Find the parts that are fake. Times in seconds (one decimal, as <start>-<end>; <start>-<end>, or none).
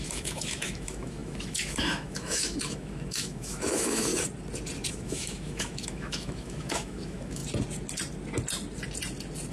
0.0-4.1; 4.9-7.4